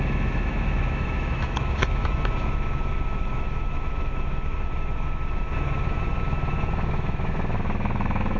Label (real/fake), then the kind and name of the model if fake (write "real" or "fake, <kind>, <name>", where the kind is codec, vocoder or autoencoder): fake, autoencoder, DAC-VAE